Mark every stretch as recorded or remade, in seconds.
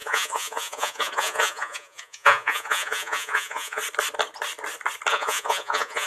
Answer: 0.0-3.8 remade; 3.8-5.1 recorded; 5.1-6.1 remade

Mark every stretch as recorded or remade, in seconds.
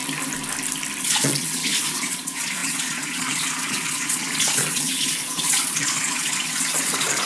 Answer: 0.0-1.0 recorded; 1.0-7.3 remade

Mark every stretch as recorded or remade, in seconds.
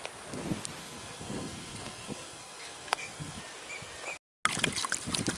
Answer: 0.0-0.8 recorded; 0.8-3.4 remade; 3.4-5.4 recorded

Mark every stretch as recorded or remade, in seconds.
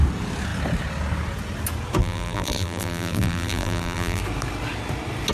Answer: 0.0-2.0 recorded; 2.0-4.2 remade; 4.2-5.3 recorded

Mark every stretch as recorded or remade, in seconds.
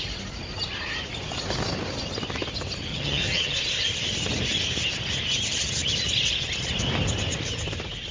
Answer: 0.0-2.9 recorded; 2.9-3.6 remade; 3.6-8.1 recorded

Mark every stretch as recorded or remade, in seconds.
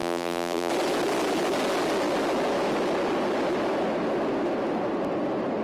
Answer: 0.0-0.7 remade; 0.7-5.6 recorded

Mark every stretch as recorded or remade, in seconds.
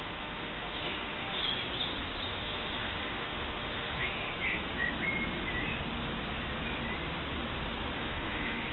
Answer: 0.0-1.4 remade; 1.4-2.3 recorded; 2.3-4.3 remade; 4.3-8.0 recorded; 8.0-8.7 remade